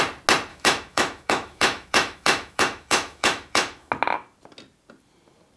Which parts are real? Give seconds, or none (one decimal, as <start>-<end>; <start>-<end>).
0.0-0.5; 3.9-5.6